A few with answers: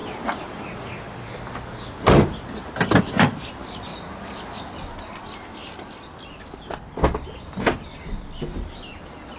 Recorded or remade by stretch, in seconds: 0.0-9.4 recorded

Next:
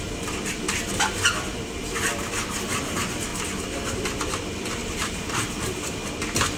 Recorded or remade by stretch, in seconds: 0.0-4.8 recorded; 4.8-5.4 remade; 5.4-6.6 recorded

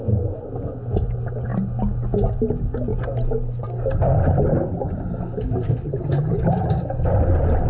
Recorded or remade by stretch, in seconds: 0.0-7.7 recorded